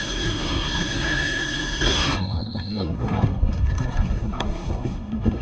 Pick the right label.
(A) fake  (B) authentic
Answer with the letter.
A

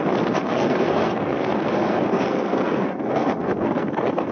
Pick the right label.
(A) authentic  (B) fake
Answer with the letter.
B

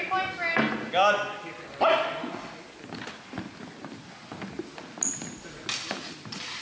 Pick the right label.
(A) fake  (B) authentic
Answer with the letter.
B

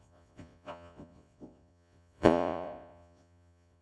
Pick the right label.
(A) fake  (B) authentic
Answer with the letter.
A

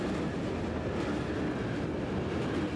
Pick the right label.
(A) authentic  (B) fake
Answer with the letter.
A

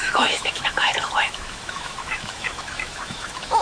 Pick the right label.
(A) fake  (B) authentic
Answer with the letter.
A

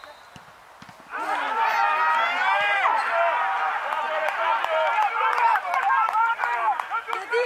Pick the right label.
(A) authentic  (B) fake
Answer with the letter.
A